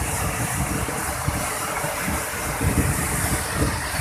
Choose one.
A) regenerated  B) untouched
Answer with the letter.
B